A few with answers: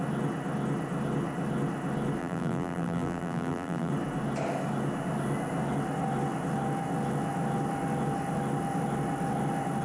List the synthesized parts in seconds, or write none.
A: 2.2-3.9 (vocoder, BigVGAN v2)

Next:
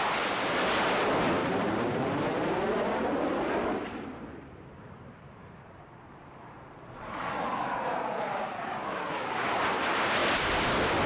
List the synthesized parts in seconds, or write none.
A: 1.4-4.4 (vocoder, BigVGAN v2); 5.0-8.5

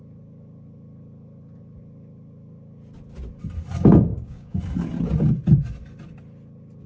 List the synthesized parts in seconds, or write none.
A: 4.1-4.6 (codec, DAC)